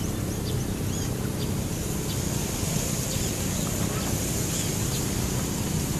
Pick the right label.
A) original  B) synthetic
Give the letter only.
A